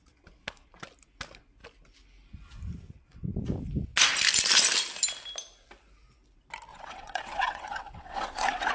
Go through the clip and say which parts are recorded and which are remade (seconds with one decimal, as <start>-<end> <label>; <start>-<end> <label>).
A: 0.0-6.7 recorded; 6.7-8.7 remade